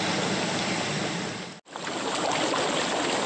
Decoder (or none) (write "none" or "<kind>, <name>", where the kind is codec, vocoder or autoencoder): none